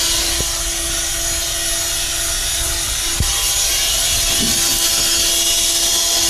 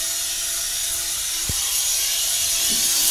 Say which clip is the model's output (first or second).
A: second